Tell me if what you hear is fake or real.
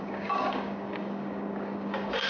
fake